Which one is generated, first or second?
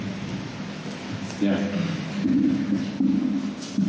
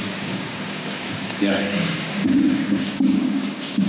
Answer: second